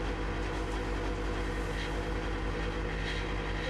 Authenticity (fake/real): real